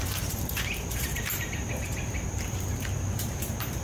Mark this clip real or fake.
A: fake